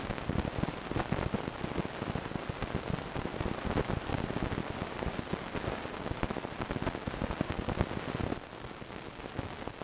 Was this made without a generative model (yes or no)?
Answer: yes